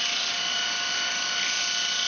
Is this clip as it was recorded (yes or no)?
yes